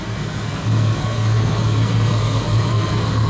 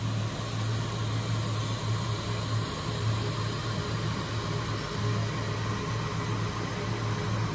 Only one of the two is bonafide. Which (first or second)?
second